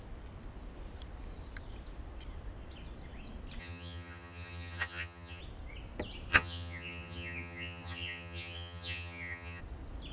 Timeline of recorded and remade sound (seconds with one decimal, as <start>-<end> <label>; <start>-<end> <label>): 0.0-3.6 recorded; 3.6-5.4 remade; 5.4-6.3 recorded; 6.3-9.6 remade; 9.6-10.1 recorded